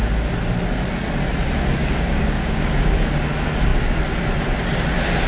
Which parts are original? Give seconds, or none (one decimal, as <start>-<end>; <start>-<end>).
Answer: 0.0-1.8; 3.2-5.3